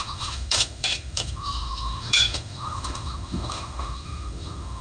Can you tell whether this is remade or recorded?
remade